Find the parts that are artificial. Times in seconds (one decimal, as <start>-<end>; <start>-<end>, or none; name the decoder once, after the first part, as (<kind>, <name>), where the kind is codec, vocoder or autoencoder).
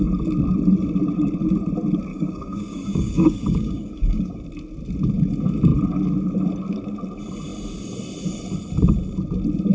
2.1-4.4 (codec, DAC)